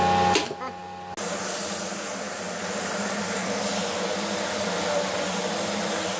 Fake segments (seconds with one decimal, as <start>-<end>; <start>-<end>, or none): none